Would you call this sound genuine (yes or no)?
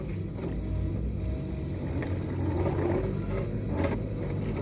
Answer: yes